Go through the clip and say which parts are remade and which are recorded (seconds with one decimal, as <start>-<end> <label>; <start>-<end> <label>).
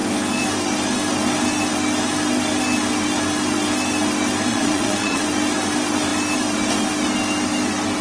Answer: 0.0-4.5 recorded; 4.5-5.2 remade; 5.2-8.0 recorded